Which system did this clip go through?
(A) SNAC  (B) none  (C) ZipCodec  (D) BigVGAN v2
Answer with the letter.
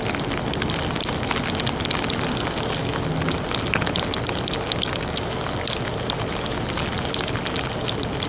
B